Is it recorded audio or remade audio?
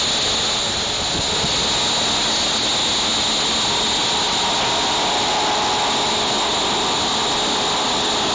recorded